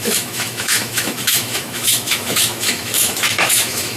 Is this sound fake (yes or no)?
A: yes